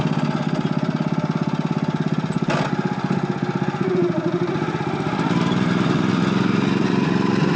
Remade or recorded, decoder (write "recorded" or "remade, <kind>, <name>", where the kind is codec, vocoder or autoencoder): recorded